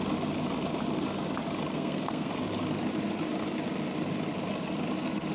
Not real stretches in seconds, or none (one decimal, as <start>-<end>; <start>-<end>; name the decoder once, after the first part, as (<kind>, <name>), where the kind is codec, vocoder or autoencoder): 1.7-2.3 (codec, SNAC)